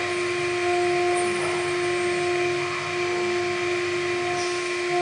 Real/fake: real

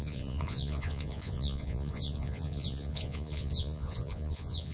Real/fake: fake